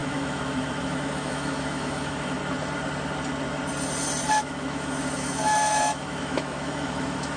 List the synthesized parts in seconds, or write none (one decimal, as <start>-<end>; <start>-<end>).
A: 0.0-2.4; 4.4-7.4